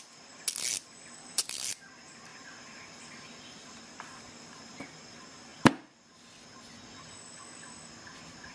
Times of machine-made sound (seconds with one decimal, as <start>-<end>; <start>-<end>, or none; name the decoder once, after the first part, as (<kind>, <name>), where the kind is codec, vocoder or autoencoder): 0.7-1.7 (vocoder, BigVGAN v2); 2.3-4.8